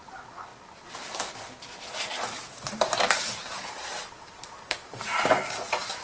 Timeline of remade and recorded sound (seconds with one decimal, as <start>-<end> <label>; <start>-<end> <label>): 0.0-6.0 recorded

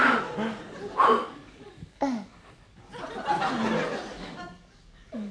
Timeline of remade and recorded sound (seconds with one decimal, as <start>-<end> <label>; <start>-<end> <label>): 0.0-1.2 recorded; 1.2-2.9 remade; 2.9-4.1 recorded; 4.1-5.3 remade